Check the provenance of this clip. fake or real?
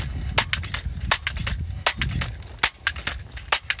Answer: real